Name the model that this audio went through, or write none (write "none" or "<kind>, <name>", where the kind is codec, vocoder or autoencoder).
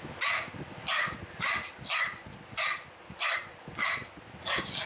none